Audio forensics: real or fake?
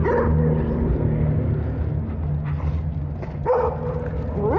real